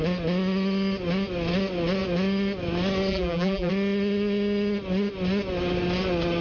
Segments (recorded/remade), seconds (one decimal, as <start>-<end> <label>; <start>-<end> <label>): 0.0-3.1 recorded; 3.1-3.7 remade; 3.7-6.4 recorded